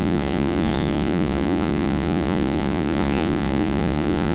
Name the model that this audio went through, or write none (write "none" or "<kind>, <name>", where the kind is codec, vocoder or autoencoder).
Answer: vocoder, Vocos